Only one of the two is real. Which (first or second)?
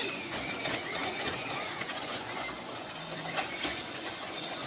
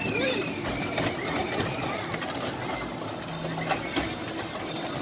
second